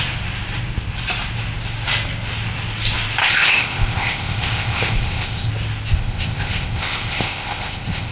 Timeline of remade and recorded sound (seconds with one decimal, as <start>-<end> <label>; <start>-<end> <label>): 0.0-3.2 recorded; 3.2-5.5 remade; 5.5-5.9 recorded; 5.9-8.1 remade